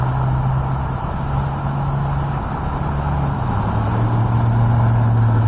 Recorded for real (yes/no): yes